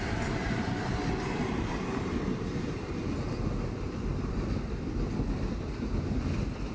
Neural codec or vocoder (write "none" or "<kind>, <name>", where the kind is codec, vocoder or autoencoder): none